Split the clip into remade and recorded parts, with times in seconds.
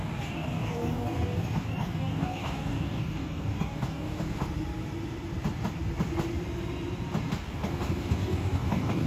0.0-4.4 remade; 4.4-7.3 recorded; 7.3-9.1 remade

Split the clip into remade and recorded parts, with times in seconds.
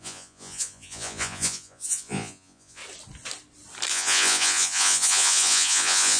0.0-2.8 remade; 2.8-3.9 recorded; 3.9-6.2 remade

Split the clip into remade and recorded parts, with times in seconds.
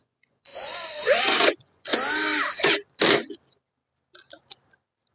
0.0-1.9 remade; 1.9-5.1 recorded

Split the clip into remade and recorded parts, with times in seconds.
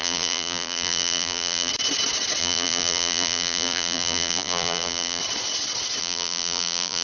0.0-1.7 remade; 1.7-2.4 recorded; 2.4-5.2 remade; 5.2-6.0 recorded; 6.0-7.0 remade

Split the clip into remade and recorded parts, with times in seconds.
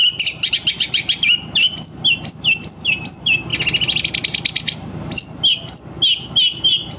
0.0-7.0 recorded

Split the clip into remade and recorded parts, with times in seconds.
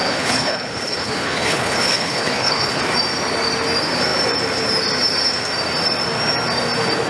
0.0-2.8 remade; 2.8-7.1 recorded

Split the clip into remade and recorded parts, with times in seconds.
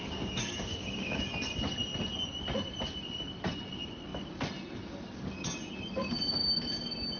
0.0-1.2 remade; 1.2-7.2 recorded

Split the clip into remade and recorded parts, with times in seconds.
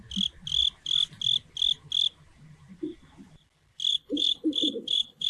0.0-3.9 recorded; 3.9-5.3 remade